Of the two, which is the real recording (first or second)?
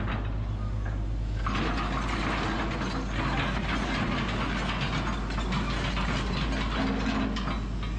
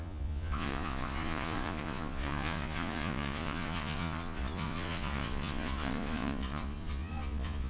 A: first